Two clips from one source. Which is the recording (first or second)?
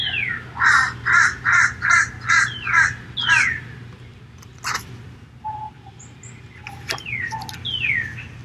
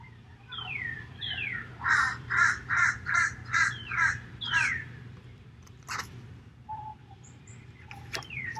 first